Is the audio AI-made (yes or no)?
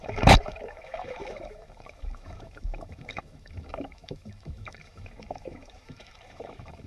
yes